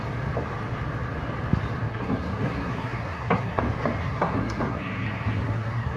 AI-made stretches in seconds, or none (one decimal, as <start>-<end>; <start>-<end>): 1.9-3.6; 4.0-6.0